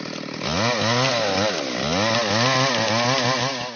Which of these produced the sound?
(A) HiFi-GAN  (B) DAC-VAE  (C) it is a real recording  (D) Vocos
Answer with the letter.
C